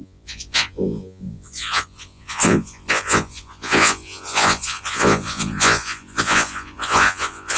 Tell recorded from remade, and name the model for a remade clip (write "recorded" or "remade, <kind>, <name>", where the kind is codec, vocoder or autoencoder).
remade, vocoder, Vocos